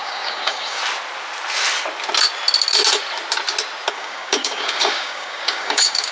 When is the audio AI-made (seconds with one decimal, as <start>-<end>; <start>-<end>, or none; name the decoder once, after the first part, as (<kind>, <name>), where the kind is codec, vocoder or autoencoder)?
0.0-0.8 (codec, DAC); 3.9-6.1